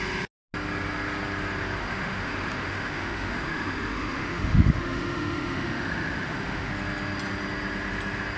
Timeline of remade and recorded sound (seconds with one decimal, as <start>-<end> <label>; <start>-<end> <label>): 0.0-1.8 recorded; 1.8-6.7 remade; 6.7-8.4 recorded